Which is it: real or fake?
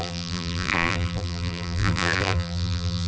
fake